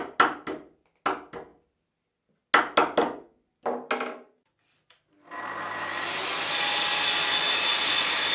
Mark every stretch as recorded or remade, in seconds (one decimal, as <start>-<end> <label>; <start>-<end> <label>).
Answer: 0.0-8.3 recorded